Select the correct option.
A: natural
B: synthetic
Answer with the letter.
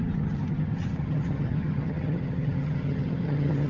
B